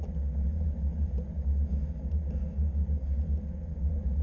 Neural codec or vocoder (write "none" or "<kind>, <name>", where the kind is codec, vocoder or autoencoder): none